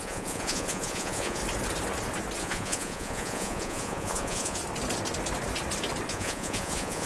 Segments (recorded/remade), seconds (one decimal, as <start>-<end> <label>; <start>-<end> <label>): 0.0-1.4 remade; 1.4-2.4 recorded; 2.4-4.6 remade; 4.6-6.1 recorded; 6.1-7.1 remade